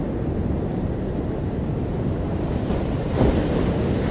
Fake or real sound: real